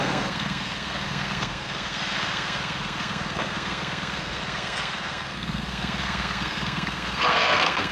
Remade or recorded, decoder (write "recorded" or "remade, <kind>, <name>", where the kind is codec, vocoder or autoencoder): remade, codec, SNAC